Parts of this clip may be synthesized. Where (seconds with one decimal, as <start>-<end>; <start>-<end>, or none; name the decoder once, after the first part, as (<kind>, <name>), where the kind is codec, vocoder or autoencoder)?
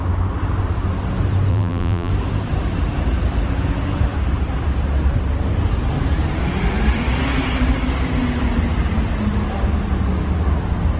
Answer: 1.5-2.1 (vocoder, BigVGAN v2)